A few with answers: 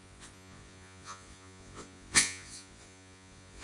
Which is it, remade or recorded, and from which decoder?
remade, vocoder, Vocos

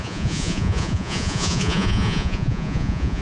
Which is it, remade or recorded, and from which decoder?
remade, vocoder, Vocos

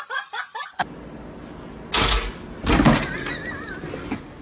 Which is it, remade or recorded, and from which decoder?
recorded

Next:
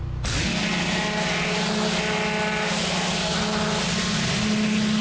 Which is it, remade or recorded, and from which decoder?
recorded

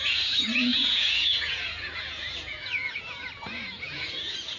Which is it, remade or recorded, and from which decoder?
remade, vocoder, Vocos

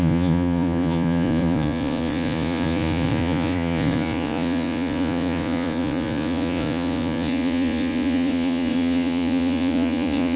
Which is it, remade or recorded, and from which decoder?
remade, vocoder, Vocos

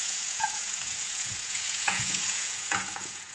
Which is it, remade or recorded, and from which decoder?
remade, vocoder, Vocos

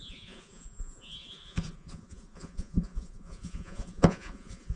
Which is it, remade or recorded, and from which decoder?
remade, vocoder, Vocos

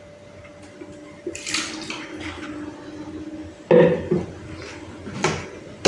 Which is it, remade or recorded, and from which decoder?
recorded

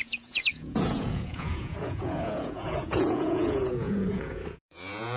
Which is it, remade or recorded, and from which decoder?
remade, vocoder, Vocos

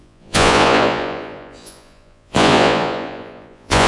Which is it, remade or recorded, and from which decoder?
remade, vocoder, Vocos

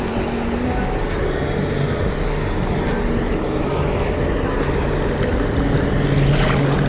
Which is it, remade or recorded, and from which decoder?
recorded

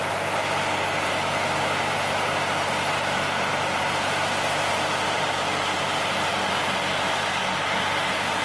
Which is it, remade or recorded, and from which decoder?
recorded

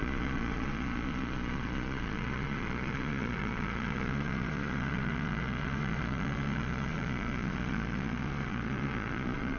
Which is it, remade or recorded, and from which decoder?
remade, vocoder, Vocos